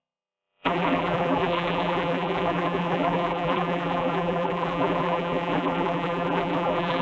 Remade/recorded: remade